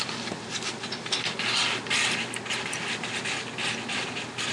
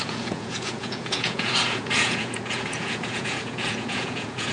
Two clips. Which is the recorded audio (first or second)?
first